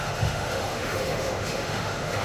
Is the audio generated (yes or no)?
yes